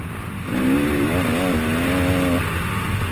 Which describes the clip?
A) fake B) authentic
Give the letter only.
B